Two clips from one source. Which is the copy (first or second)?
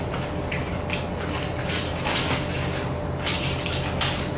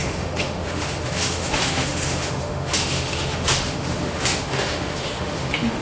second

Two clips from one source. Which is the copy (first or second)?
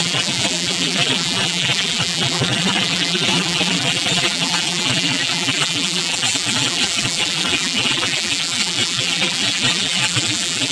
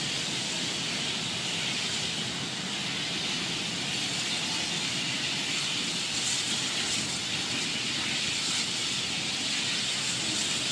first